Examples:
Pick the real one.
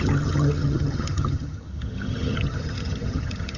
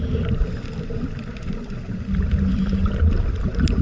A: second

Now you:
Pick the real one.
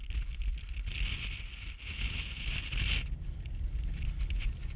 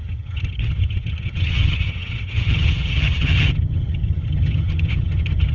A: first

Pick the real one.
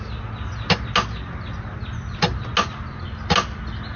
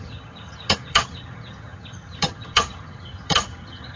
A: first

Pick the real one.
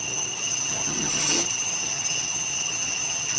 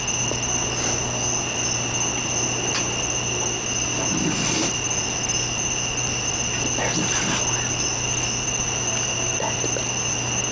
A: second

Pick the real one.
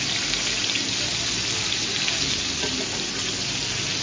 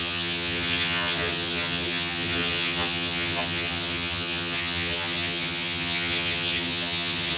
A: first